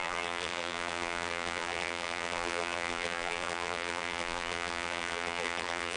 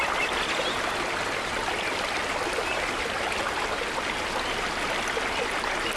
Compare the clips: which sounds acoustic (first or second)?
second